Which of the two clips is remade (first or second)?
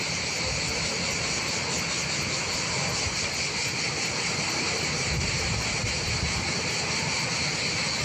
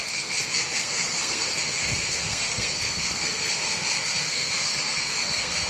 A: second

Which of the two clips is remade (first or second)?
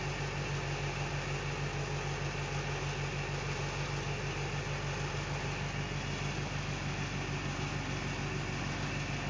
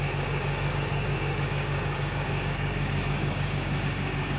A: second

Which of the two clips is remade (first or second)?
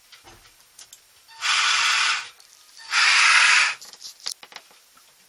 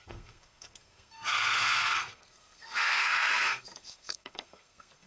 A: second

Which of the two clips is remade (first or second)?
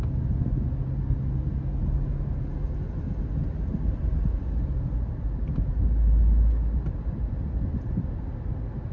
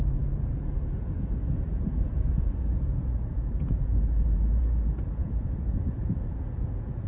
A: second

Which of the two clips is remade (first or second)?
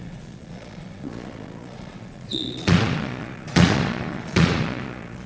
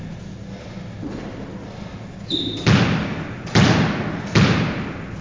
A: first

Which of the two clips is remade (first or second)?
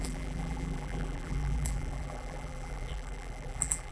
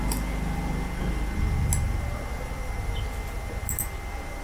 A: first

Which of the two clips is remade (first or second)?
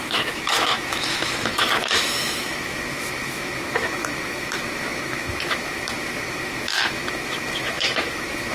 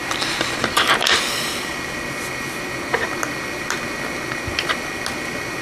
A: first